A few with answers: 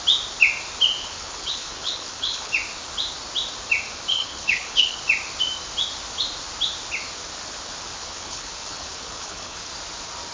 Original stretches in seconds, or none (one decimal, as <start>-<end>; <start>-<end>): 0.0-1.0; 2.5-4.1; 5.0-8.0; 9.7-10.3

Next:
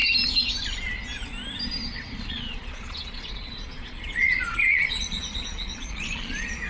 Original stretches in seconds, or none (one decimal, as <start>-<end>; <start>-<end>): 0.0-2.2

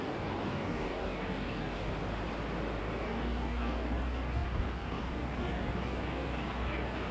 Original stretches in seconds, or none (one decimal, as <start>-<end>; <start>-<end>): 1.9-2.8

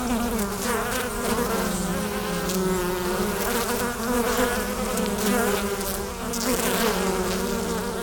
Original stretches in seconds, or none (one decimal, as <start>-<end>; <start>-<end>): 0.0-8.0